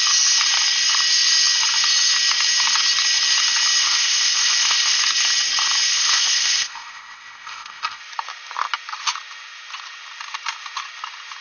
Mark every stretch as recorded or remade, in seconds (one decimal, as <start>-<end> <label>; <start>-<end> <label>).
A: 0.0-3.8 recorded; 3.8-5.0 remade; 5.0-5.9 recorded; 5.9-8.0 remade; 8.0-11.4 recorded